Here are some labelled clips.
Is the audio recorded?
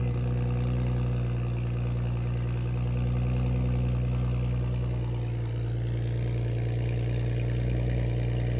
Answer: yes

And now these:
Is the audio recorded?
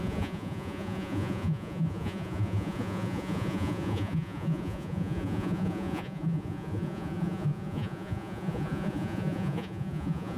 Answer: no